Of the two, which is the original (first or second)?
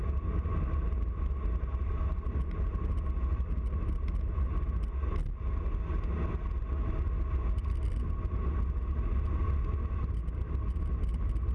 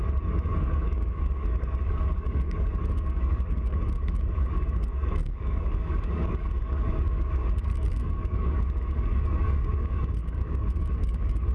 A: first